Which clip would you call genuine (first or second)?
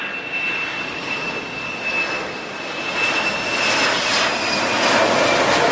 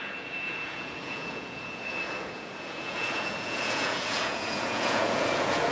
first